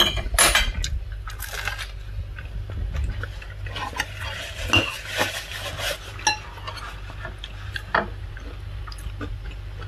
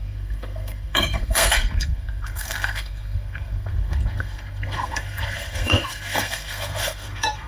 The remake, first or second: second